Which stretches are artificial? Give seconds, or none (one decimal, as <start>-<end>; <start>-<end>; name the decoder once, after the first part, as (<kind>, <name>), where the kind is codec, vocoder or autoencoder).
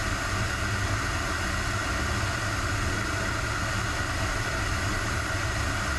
none